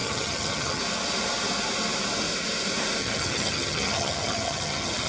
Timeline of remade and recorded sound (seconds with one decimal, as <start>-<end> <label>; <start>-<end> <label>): 0.0-0.8 remade; 0.8-3.0 recorded; 3.0-5.1 remade